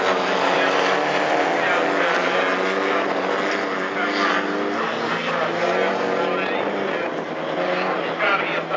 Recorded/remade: recorded